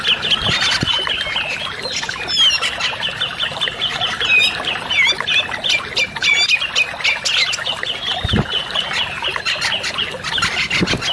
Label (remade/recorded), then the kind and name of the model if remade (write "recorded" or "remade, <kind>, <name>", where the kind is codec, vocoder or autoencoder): recorded